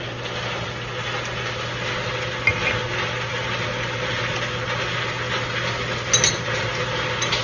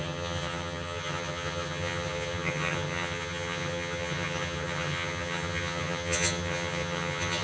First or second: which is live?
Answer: first